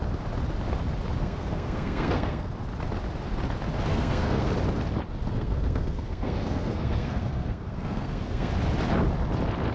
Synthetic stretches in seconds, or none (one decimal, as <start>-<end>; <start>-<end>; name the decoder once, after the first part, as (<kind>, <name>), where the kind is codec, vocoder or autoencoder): 1.2-2.5 (codec, SNAC); 3.9-4.5; 5.3-8.5